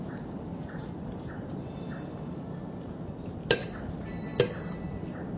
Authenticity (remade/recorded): recorded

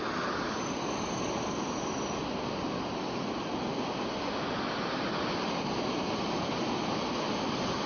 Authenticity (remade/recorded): recorded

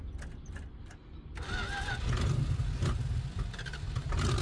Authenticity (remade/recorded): recorded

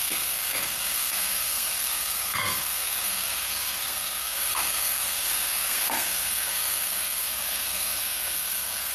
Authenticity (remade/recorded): remade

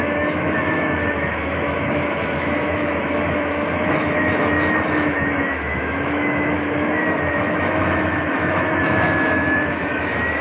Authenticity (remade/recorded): remade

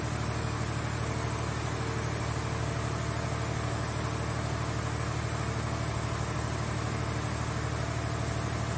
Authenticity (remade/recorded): recorded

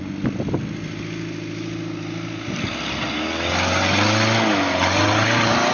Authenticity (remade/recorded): recorded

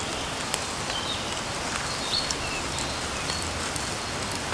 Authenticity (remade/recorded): recorded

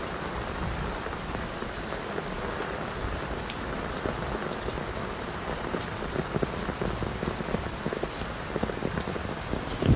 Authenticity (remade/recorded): recorded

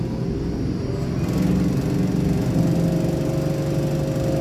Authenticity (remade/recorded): recorded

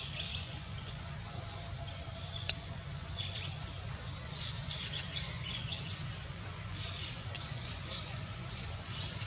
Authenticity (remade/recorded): remade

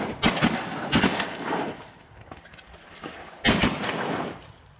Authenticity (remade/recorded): recorded